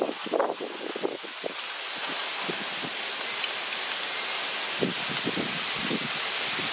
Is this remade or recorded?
recorded